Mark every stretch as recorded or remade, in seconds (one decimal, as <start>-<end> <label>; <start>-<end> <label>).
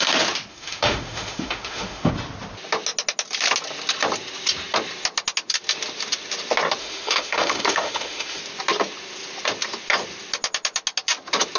0.0-0.5 recorded; 0.5-2.1 remade; 2.1-6.8 recorded; 6.8-8.4 remade; 8.4-11.6 recorded